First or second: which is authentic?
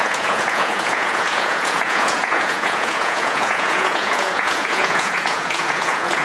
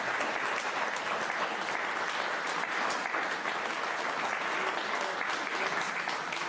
second